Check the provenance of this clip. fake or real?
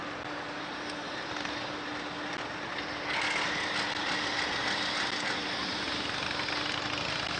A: real